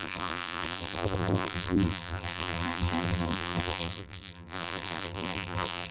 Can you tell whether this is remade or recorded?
remade